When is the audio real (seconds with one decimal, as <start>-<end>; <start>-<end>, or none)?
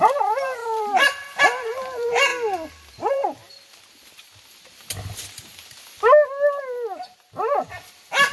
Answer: 2.3-2.9; 3.4-7.7